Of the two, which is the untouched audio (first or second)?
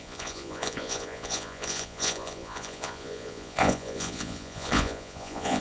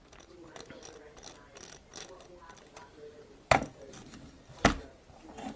second